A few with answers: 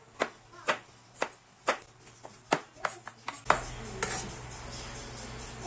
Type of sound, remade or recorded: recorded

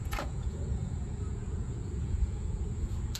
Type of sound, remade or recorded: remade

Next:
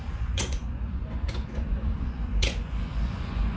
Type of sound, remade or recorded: remade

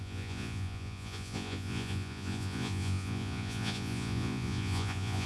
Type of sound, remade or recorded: remade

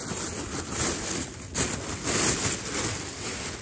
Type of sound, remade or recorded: recorded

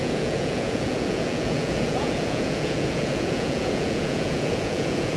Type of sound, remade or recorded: remade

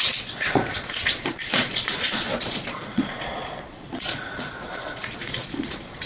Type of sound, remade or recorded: remade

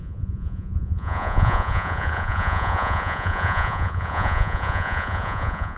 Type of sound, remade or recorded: remade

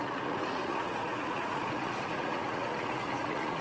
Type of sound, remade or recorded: remade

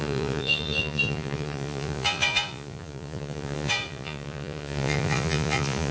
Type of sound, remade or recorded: remade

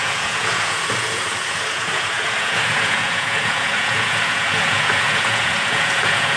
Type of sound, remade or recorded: remade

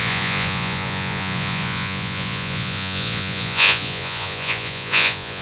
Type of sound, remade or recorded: remade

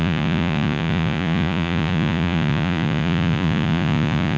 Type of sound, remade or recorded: remade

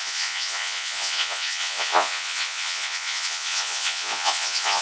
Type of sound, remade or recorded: remade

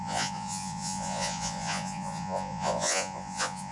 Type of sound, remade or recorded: remade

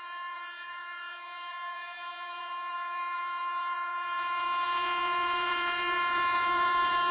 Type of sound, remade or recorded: remade